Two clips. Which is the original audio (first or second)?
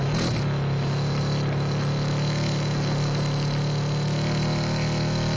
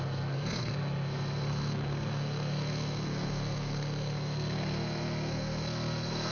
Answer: first